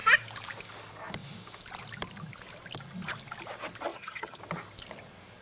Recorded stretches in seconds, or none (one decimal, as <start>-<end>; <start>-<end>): 0.0-3.9; 4.4-5.4